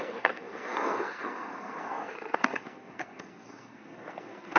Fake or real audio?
fake